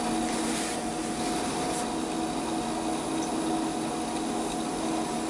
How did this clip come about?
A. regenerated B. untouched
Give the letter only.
B